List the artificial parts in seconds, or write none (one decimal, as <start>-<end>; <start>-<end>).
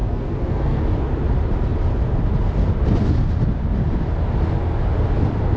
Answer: 0.0-0.8